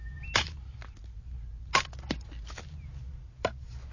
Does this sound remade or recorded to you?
recorded